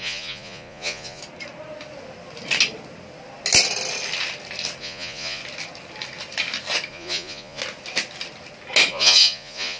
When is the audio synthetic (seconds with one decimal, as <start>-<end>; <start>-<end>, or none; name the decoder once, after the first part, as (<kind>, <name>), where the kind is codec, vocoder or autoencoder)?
0.0-1.2 (vocoder, Vocos); 4.8-5.4; 6.9-7.6; 8.9-9.8